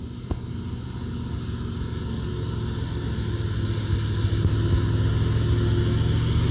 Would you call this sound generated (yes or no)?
no